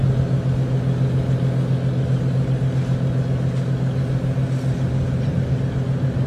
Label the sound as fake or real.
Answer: real